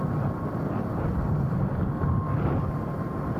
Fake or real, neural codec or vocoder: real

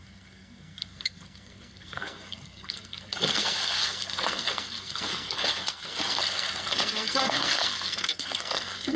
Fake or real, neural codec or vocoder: fake, codec, SNAC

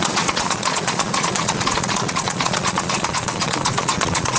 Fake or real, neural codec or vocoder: fake, vocoder, Vocos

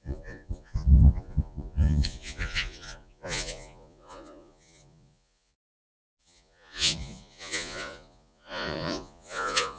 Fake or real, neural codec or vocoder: fake, vocoder, Vocos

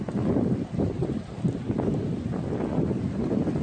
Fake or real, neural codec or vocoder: real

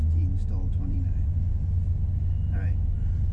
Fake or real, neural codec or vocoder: real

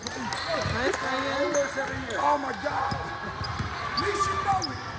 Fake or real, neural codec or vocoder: real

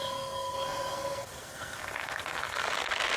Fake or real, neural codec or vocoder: fake, codec, SNAC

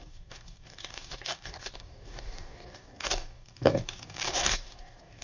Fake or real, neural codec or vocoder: fake, codec, DAC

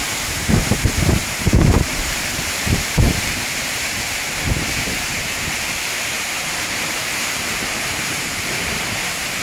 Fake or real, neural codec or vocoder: fake, vocoder, BigVGAN v2